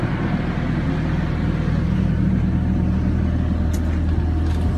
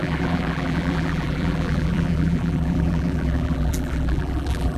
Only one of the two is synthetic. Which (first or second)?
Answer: second